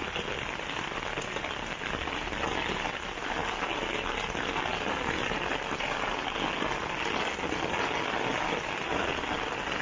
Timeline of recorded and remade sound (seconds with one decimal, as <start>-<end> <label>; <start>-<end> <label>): 0.0-9.8 recorded